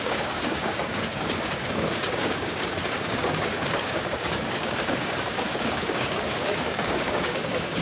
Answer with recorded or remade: remade